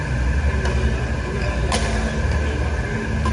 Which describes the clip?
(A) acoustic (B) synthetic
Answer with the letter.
A